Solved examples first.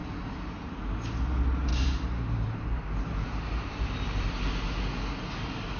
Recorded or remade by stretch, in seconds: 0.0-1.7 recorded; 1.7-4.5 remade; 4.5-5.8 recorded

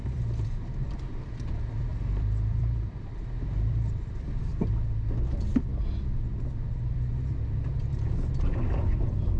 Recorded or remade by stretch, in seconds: 0.0-4.5 remade; 4.5-5.3 recorded; 5.3-7.1 remade; 7.1-8.3 recorded; 8.3-9.4 remade

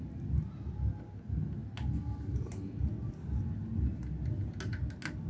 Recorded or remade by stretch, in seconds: 0.0-5.3 recorded

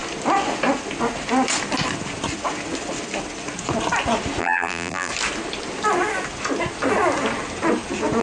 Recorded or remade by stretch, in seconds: 0.0-4.4 recorded; 4.4-5.1 remade; 5.1-8.2 recorded

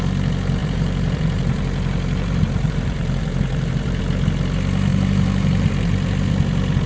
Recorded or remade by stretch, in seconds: 0.0-0.6 recorded; 0.6-4.0 remade; 4.0-4.9 recorded; 4.9-6.3 remade; 6.3-6.9 recorded

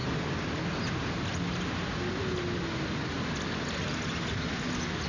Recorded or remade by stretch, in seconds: 0.0-5.1 recorded

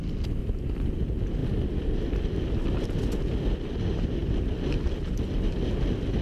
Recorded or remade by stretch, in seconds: 0.0-0.4 recorded; 0.4-0.9 remade; 0.9-1.4 recorded; 1.4-2.0 remade; 2.0-6.2 recorded